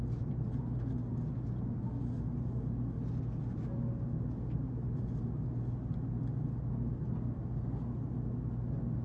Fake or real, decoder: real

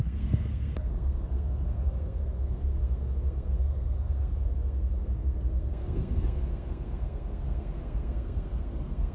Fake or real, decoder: fake, codec, SNAC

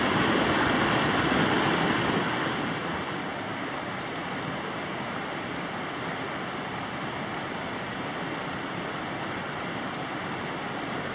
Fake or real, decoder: real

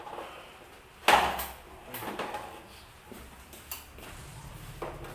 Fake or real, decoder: real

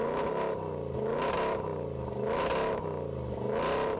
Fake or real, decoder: real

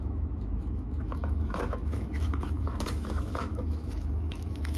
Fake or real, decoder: fake, autoencoder, DAC-VAE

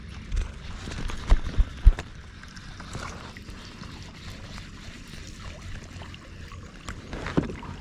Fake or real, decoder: real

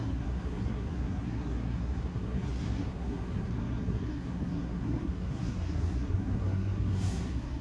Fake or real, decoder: fake, codec, SNAC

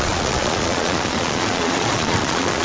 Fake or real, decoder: fake, vocoder, Vocos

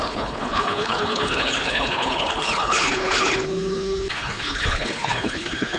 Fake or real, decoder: fake, codec, HILCodec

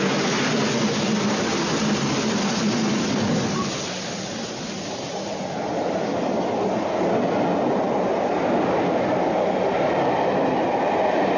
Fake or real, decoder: real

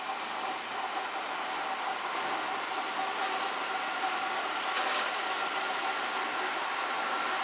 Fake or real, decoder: real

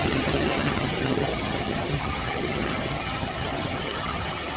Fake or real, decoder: fake, vocoder, HiFi-GAN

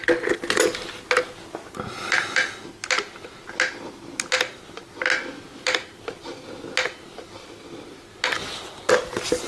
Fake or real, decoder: real